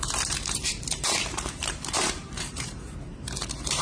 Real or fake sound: fake